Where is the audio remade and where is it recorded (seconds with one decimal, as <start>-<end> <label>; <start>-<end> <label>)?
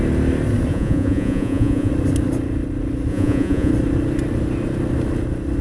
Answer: 0.0-0.7 recorded; 0.7-1.9 remade; 1.9-3.1 recorded; 3.1-3.7 remade; 3.7-5.6 recorded